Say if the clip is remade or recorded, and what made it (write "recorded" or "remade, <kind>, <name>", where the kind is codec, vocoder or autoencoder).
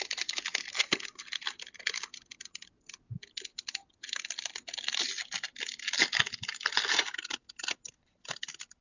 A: recorded